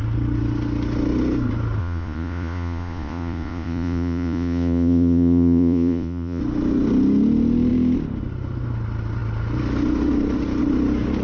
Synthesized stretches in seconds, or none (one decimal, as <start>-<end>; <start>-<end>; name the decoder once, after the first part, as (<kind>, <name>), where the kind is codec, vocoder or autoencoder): 1.8-6.4 (vocoder, Vocos)